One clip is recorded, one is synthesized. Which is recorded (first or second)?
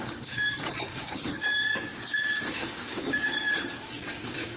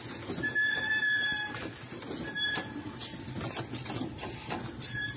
second